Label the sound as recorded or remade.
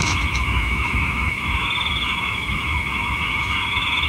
remade